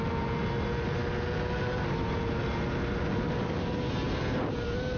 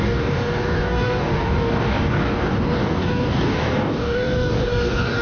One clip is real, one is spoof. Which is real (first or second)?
first